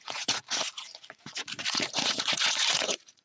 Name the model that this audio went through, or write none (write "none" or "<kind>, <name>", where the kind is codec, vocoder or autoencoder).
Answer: vocoder, Vocos